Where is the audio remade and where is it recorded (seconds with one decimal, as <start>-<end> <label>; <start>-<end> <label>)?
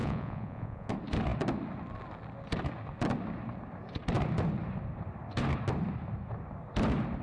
0.0-0.9 remade; 0.9-7.2 recorded